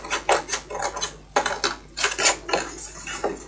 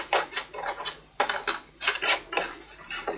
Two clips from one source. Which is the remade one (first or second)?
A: second